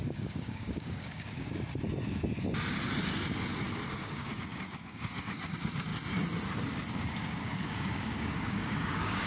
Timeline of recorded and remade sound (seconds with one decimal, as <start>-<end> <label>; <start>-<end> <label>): 0.0-1.5 remade; 1.5-4.0 recorded; 4.0-5.9 remade; 5.9-6.9 recorded; 6.9-9.3 remade